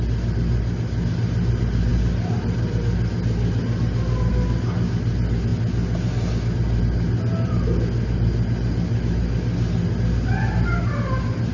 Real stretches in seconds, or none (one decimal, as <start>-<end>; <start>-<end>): 0.0-11.5